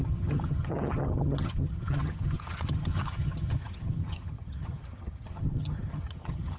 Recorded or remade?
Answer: remade